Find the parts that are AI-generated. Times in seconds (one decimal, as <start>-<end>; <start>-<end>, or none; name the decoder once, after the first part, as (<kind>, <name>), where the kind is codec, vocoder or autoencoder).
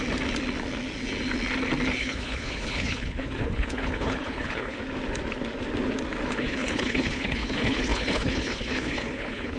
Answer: 2.0-4.8 (codec, HILCodec); 6.3-9.6